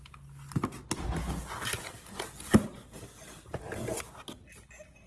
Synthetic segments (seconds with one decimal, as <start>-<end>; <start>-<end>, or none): none